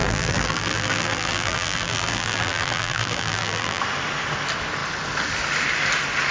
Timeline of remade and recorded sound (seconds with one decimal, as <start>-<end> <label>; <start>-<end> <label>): 0.0-3.8 remade; 3.8-6.3 recorded